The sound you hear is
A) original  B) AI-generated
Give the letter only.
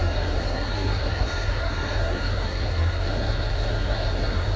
B